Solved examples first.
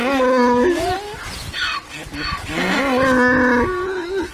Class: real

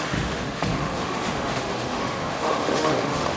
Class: fake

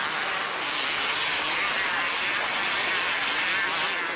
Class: real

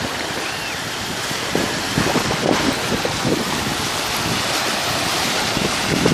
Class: real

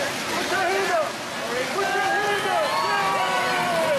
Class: real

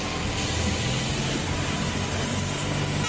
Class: real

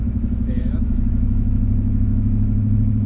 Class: fake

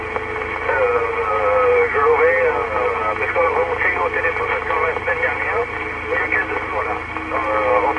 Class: real